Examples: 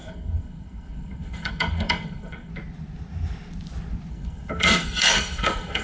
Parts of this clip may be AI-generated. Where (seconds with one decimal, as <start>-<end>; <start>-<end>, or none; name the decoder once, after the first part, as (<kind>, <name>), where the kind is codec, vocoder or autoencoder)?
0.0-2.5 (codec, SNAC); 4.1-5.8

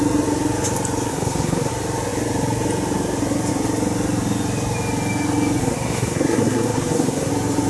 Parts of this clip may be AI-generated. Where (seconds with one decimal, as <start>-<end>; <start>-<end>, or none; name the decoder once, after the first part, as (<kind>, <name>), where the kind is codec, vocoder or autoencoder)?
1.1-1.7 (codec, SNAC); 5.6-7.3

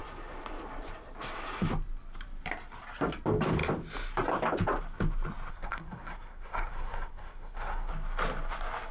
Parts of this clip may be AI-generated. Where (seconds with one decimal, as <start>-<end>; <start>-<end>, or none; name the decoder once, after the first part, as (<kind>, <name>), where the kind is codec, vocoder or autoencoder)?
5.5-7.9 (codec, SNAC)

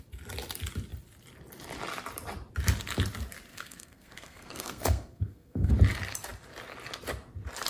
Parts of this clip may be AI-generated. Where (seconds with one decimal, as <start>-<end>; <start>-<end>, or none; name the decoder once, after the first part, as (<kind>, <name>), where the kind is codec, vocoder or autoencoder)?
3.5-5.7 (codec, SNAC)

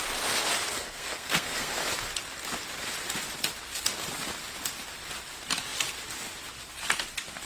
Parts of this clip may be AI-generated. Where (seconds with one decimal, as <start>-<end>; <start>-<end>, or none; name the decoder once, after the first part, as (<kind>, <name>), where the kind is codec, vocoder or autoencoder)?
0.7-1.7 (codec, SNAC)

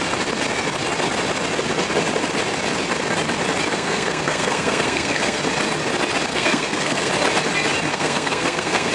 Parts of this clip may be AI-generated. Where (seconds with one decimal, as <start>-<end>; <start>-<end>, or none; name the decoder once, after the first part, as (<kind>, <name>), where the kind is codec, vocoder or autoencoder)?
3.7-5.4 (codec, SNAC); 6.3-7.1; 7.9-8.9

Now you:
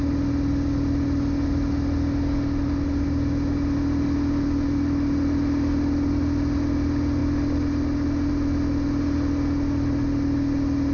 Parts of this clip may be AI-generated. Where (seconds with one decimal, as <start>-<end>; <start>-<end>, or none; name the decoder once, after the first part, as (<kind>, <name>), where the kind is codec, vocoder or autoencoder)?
none

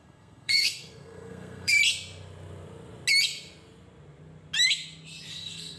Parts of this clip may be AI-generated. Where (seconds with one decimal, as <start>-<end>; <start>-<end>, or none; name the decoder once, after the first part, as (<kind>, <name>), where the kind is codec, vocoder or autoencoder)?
0.0-1.8 (codec, SNAC); 5.3-5.8